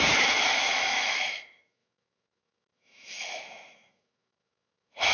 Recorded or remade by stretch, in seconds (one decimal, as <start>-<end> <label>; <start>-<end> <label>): 0.0-5.1 remade